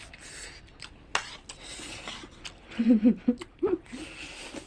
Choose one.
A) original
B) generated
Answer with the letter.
A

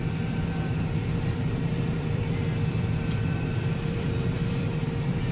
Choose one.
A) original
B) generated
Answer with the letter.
B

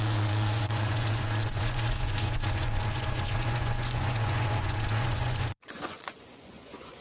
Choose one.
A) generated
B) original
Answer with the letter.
A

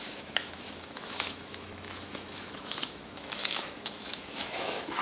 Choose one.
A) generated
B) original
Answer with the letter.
A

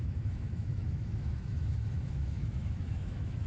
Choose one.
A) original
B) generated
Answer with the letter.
B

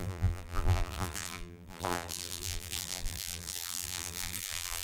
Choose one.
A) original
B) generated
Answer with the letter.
B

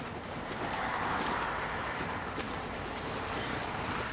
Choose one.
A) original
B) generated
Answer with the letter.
B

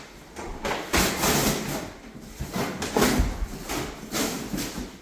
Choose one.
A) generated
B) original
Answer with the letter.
B